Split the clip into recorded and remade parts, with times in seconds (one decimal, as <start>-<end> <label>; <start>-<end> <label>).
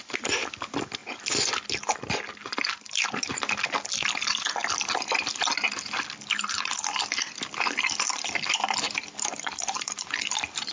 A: 0.0-10.7 recorded